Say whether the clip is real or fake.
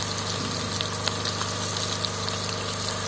real